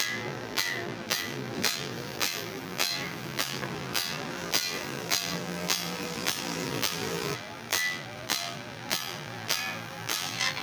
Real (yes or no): no